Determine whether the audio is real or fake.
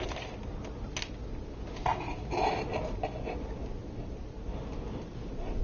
real